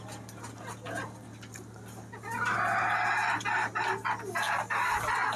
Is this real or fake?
real